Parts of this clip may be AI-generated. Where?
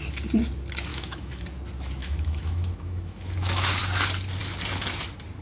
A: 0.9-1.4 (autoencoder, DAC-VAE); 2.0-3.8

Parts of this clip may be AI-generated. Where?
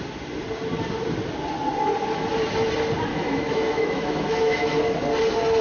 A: 3.1-4.8 (autoencoder, DAC-VAE)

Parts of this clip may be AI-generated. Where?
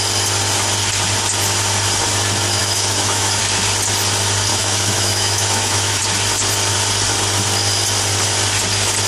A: 2.6-3.4 (autoencoder, DAC-VAE); 4.5-6.0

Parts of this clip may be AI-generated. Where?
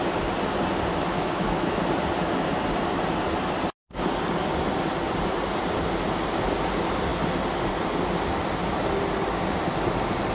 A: 0.9-1.8 (autoencoder, DAC-VAE)